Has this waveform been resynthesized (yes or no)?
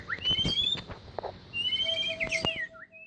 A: no